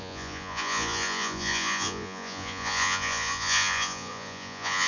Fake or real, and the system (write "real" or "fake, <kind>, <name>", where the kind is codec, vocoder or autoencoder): fake, vocoder, Vocos